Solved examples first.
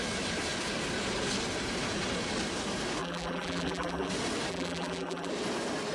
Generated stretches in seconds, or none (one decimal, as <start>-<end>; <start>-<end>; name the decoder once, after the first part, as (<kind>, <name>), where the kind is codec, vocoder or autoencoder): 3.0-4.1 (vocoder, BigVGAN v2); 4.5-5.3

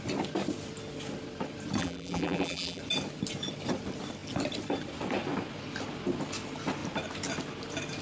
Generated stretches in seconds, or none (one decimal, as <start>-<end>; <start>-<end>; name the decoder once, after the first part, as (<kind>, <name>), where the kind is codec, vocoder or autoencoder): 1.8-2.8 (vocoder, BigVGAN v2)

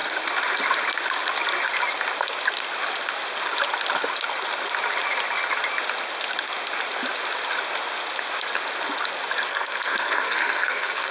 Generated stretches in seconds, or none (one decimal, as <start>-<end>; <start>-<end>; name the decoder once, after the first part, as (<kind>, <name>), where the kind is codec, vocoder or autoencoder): 9.5-11.1 (codec, SNAC)

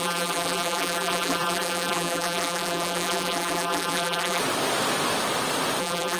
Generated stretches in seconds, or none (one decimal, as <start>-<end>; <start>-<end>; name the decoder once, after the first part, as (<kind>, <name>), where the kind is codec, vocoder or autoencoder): 0.0-4.4 (vocoder, BigVGAN v2); 5.8-6.2